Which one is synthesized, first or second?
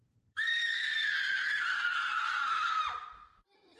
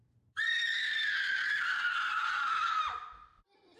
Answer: first